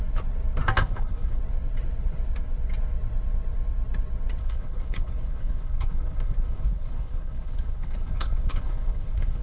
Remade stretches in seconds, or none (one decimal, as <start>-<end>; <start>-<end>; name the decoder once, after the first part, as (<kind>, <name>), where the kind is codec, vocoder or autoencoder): 0.8-1.4 (codec, HILCodec); 4.4-9.4